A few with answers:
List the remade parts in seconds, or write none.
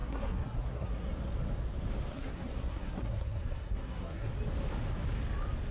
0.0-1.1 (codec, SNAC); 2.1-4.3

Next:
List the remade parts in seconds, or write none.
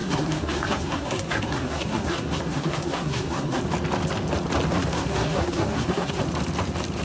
0.0-3.6 (codec, SNAC); 4.9-6.2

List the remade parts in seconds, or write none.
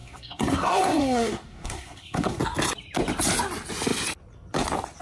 0.0-2.4 (codec, SNAC)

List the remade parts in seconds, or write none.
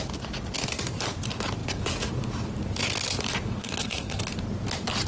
3.6-4.2 (codec, SNAC)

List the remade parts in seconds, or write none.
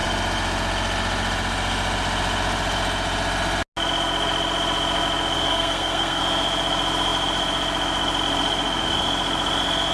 5.5-6.2 (codec, SNAC)